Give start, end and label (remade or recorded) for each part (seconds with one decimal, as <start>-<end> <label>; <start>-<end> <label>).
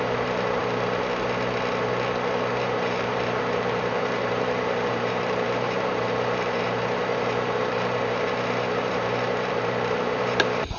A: 0.0-0.6 remade; 0.6-2.6 recorded; 2.6-10.8 remade